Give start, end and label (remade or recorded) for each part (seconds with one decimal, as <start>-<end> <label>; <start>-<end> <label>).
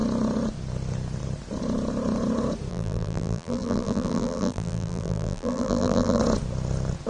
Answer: 0.0-2.7 recorded; 2.7-6.2 remade; 6.2-7.1 recorded